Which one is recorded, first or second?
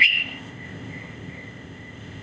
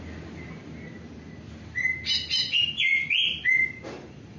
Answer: second